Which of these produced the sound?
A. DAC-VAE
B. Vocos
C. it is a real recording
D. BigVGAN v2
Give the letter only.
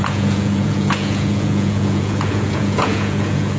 B